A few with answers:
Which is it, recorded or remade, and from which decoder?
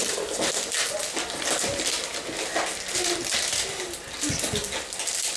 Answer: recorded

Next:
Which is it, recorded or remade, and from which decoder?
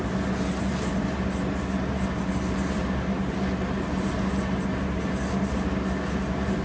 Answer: recorded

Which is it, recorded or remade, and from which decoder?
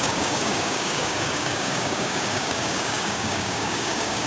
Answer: remade, codec, DAC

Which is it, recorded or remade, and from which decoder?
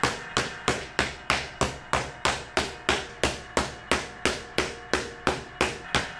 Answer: recorded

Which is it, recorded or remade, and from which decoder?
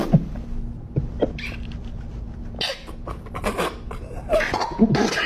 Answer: recorded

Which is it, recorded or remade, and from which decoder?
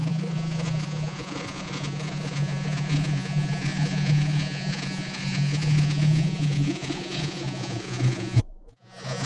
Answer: remade, vocoder, Vocos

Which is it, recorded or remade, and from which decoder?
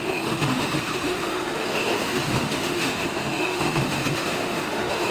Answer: remade, autoencoder, DAC-VAE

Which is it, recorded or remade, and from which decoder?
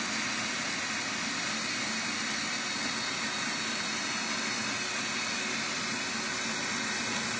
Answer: recorded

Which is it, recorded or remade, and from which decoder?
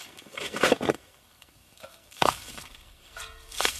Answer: remade, codec, SNAC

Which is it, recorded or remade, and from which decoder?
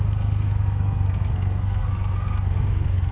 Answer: remade, codec, SNAC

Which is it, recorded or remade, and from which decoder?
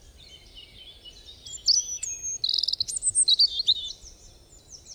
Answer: recorded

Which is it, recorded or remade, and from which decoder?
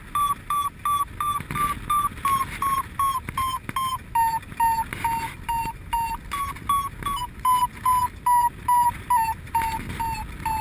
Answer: recorded